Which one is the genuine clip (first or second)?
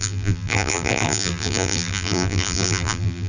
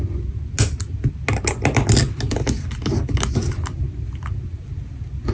second